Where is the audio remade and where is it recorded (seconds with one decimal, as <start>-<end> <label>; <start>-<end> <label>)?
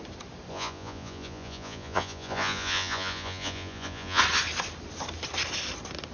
0.0-0.5 recorded; 0.5-4.2 remade; 4.2-6.1 recorded